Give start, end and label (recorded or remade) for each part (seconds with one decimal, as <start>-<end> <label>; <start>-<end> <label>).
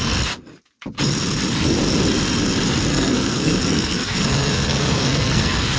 0.0-2.9 recorded; 2.9-5.8 remade